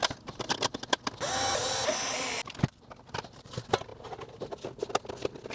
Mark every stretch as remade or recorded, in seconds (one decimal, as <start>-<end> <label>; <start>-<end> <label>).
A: 0.0-5.5 recorded